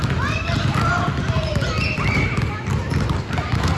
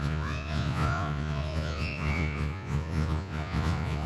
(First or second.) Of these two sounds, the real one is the first